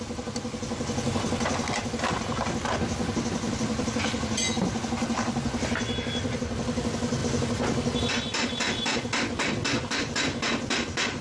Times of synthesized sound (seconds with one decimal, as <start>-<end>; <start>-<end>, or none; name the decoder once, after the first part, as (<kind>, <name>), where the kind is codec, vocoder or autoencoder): none